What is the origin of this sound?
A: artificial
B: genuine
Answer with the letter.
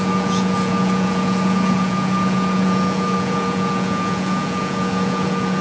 A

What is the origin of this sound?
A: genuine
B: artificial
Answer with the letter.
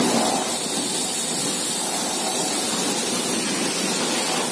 A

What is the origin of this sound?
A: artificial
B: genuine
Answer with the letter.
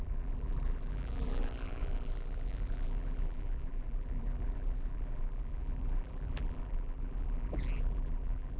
A